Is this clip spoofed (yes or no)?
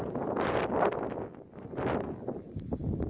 no